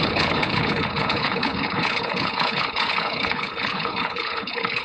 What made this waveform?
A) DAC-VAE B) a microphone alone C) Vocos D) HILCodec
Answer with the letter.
D